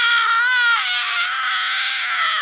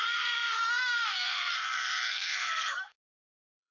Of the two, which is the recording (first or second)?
first